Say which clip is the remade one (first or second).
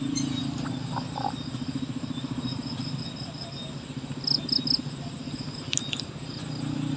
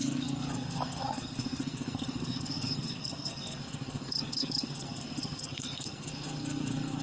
second